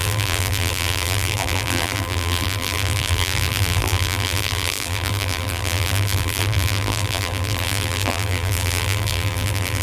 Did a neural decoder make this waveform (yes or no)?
yes